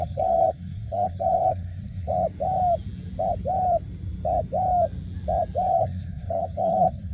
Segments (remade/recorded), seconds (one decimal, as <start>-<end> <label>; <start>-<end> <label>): 0.0-2.1 remade; 2.1-5.7 recorded; 5.7-7.1 remade

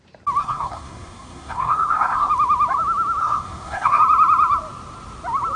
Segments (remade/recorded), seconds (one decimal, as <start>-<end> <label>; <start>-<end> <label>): 0.0-0.4 recorded; 0.4-2.3 remade; 2.3-3.2 recorded; 3.2-4.0 remade; 4.0-5.6 recorded

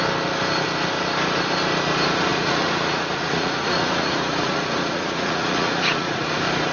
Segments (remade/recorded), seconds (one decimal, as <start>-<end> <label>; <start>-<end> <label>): 0.0-2.3 recorded; 2.3-6.3 remade; 6.3-6.7 recorded

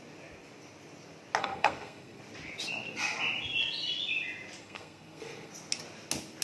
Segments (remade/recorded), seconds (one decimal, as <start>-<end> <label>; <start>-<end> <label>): 0.0-1.4 recorded; 1.4-2.2 remade; 2.2-4.6 recorded; 4.6-5.5 remade; 5.5-6.4 recorded

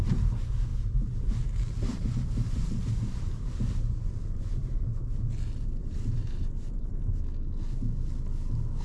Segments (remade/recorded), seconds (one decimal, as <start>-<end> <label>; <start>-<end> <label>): 0.0-0.7 recorded; 0.7-1.4 remade; 1.4-1.9 recorded; 1.9-4.6 remade; 4.6-5.8 recorded; 5.8-7.2 remade; 7.2-8.8 recorded

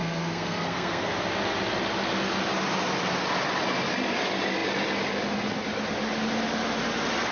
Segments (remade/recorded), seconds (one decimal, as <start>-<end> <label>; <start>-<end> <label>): 0.0-1.1 remade; 1.1-7.3 recorded